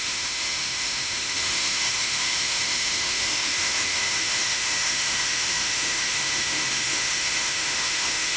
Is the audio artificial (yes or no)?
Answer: yes